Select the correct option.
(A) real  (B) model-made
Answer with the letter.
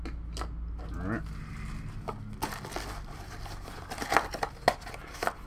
A